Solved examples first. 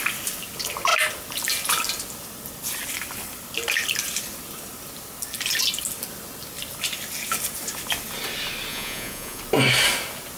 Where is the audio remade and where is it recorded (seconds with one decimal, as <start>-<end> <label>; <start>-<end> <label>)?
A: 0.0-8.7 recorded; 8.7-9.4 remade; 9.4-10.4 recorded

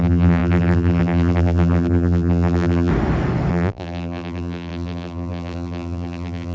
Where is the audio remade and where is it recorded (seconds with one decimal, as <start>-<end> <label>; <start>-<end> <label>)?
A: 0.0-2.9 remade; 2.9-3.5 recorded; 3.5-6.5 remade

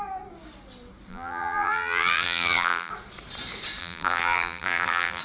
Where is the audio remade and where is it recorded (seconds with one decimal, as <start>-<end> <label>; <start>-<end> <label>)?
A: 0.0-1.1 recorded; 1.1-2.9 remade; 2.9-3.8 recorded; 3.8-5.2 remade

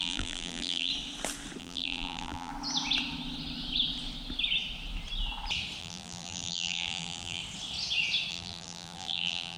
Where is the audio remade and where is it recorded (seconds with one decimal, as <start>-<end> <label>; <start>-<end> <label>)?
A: 0.0-0.9 remade; 0.9-1.6 recorded; 1.6-2.5 remade; 2.5-5.8 recorded; 5.8-7.4 remade; 7.4-8.3 recorded; 8.3-9.6 remade